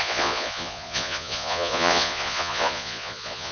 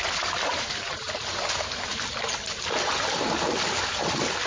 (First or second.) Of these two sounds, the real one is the second